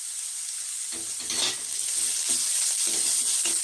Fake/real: real